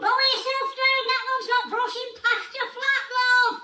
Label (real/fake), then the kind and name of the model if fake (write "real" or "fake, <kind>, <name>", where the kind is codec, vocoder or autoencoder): fake, autoencoder, DAC-VAE